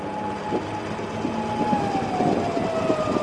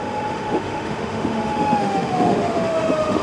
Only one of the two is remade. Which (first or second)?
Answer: second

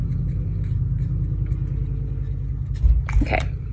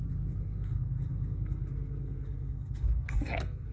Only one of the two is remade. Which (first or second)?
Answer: second